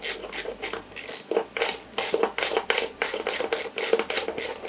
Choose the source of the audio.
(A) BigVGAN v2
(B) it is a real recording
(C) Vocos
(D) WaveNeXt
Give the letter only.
B